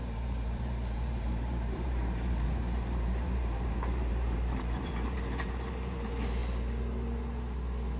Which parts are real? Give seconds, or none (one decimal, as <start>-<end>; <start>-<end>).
6.4-8.0